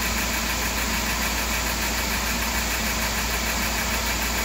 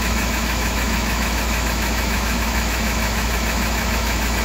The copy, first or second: second